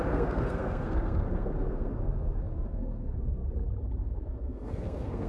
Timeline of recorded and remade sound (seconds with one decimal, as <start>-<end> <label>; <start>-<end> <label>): 0.0-3.4 remade; 3.4-4.0 recorded; 4.0-5.3 remade